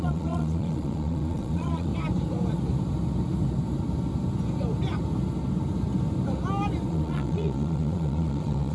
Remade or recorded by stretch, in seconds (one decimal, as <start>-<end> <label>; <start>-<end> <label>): 0.0-1.9 remade; 1.9-6.9 recorded; 6.9-8.7 remade

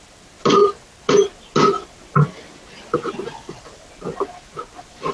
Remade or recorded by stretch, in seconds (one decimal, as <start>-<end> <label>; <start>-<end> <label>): 0.0-5.1 recorded